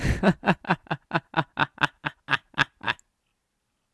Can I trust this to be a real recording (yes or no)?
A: yes